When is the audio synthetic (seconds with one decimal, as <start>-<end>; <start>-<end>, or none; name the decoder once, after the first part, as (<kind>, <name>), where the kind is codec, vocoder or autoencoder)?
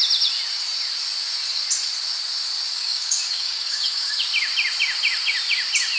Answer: 2.7-4.2 (codec, DAC)